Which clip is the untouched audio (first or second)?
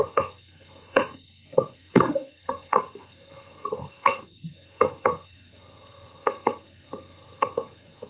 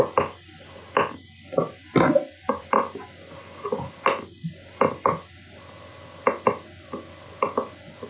second